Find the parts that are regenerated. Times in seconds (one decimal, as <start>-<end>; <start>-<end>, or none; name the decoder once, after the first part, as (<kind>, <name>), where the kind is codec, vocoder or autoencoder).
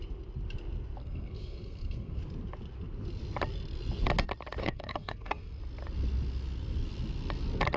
1.0-2.2 (codec, SNAC); 4.6-5.6